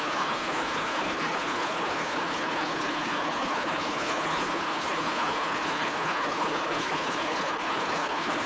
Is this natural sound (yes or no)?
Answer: no